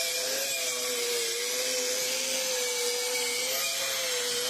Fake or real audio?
real